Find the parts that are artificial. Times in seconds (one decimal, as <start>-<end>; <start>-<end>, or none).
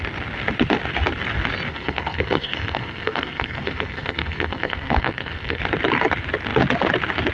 1.7-5.6